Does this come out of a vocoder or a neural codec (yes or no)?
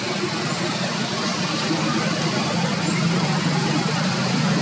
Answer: no